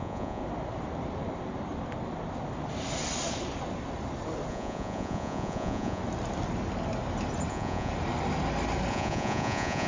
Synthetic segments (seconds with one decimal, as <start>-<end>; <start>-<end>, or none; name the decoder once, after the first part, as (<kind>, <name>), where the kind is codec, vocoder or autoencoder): 0.0-0.4 (vocoder, Vocos); 4.5-6.0; 7.5-7.9; 8.9-9.9